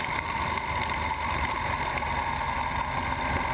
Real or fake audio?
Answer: real